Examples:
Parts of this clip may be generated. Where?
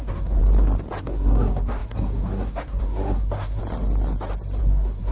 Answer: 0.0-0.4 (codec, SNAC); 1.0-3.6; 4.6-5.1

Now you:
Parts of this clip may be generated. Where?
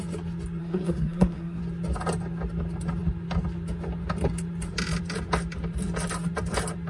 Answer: 0.6-1.6 (codec, SNAC)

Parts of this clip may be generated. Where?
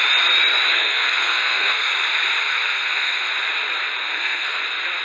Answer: 0.7-1.9 (codec, SNAC); 2.4-3.3; 4.0-4.6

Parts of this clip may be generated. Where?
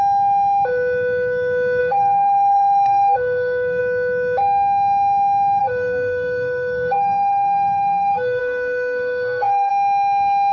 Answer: 1.8-3.8 (codec, SNAC); 5.6-9.7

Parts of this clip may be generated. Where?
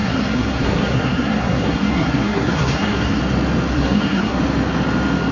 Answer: 0.0-3.2 (codec, SNAC); 3.7-4.4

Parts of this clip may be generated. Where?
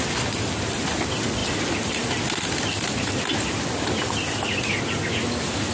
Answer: none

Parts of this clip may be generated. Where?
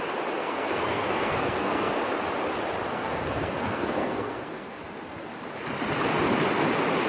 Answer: 0.4-1.9 (codec, SNAC); 2.9-4.8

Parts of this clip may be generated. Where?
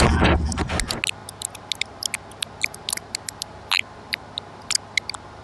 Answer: none